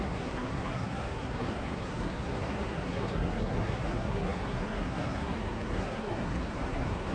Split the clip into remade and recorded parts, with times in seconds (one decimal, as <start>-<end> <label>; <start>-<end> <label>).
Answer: 0.0-7.1 remade